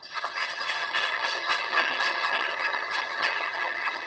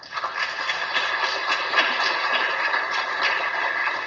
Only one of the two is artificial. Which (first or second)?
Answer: first